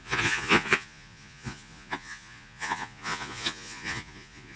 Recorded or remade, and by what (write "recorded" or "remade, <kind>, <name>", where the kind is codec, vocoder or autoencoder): remade, vocoder, Vocos